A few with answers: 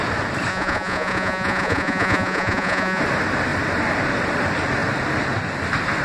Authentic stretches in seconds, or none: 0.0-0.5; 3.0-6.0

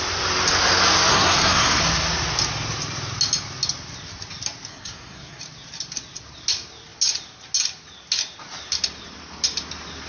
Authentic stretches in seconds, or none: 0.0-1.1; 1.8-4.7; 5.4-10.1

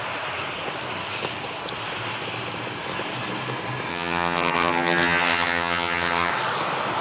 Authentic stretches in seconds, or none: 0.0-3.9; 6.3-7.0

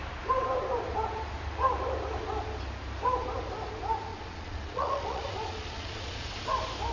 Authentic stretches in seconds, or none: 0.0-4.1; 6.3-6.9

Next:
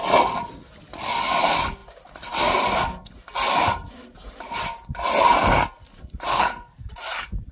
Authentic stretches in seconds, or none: 0.0-6.3; 6.9-7.5

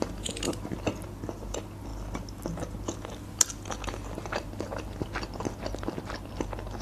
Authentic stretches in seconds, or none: 0.0-6.8

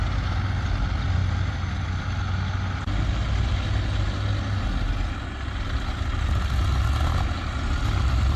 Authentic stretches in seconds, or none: 0.0-8.4

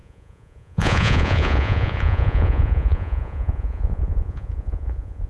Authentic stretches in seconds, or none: none